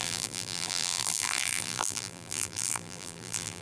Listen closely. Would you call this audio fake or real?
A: fake